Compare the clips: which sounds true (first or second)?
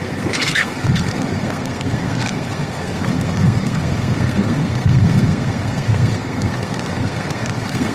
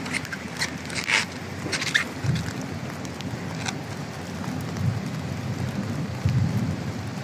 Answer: second